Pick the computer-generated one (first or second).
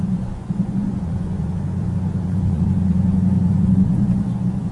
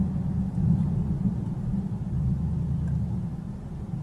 first